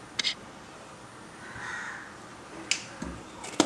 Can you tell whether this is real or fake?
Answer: real